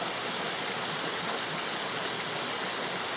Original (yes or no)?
yes